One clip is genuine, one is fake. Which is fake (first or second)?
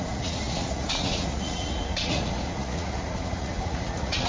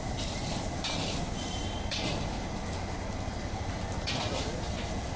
first